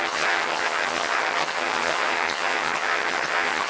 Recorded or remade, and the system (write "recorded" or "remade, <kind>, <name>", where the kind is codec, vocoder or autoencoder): remade, vocoder, HiFi-GAN